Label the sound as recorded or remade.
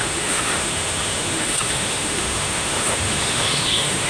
remade